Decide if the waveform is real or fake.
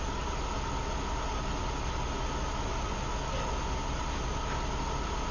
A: real